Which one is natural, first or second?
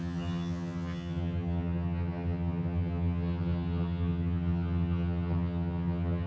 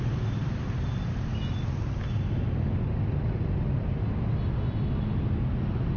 second